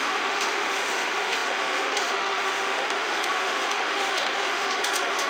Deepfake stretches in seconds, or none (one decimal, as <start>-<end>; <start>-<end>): 0.0-5.3